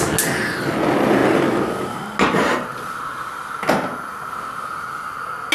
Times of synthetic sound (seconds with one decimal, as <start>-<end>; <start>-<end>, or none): none